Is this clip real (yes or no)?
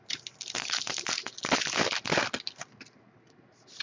yes